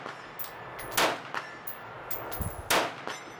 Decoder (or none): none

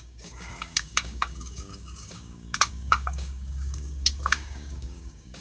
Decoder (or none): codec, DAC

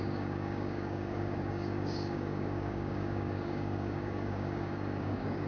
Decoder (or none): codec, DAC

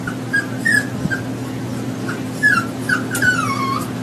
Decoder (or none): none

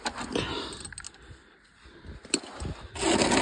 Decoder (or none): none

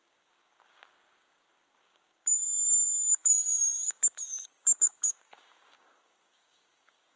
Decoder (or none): codec, DAC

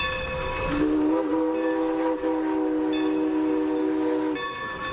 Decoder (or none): none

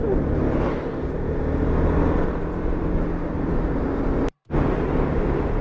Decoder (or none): none